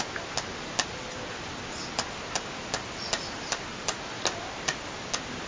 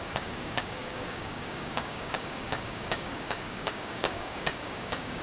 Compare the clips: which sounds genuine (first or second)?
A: first